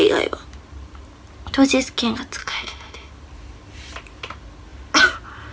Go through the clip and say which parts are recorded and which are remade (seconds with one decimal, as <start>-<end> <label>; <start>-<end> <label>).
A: 0.0-2.4 recorded; 2.4-3.1 remade; 3.1-5.5 recorded